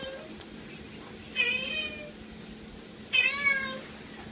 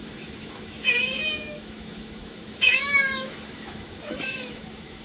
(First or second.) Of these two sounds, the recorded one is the first